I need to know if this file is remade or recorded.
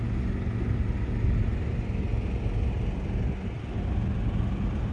recorded